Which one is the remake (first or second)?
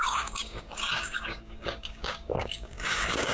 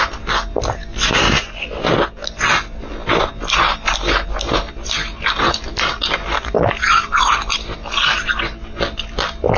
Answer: first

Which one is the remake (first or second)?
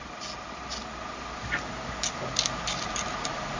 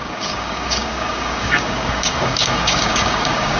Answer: second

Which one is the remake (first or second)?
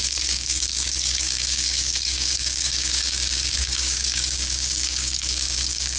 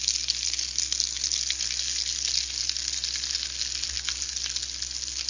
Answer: first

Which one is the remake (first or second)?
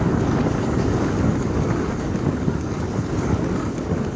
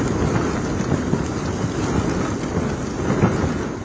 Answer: first